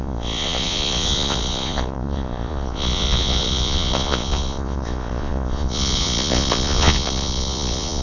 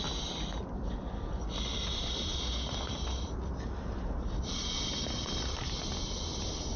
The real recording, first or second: second